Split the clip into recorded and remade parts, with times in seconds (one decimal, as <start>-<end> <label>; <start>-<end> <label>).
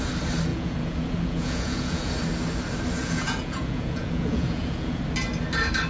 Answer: 0.0-0.5 recorded; 0.5-2.1 remade; 2.1-3.0 recorded; 3.0-5.0 remade; 5.0-5.9 recorded